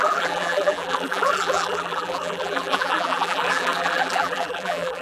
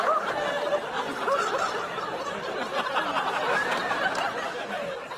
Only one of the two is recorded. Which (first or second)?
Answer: second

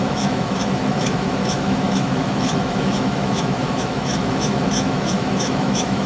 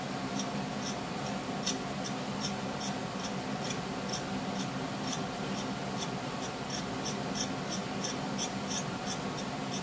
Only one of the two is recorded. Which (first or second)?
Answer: second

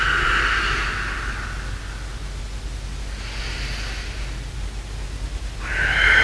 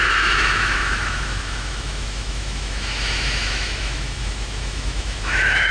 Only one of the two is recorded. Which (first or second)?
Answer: first